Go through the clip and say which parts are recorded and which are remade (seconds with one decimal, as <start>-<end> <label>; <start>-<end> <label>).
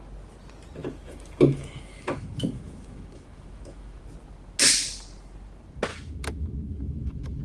0.0-0.8 recorded; 0.8-4.0 remade; 4.0-5.9 recorded; 5.9-7.4 remade